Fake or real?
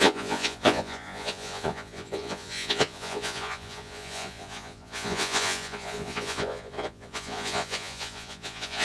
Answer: fake